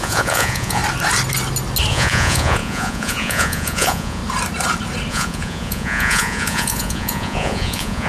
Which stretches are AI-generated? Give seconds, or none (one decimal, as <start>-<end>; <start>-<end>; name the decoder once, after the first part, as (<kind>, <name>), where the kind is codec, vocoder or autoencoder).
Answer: 0.0-0.8 (vocoder, Vocos); 1.9-4.2; 5.1-8.1